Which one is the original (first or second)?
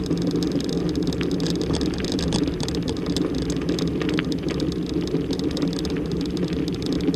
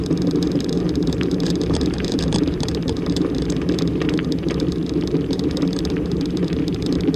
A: first